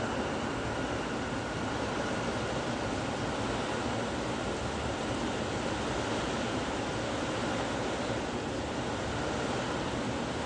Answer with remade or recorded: recorded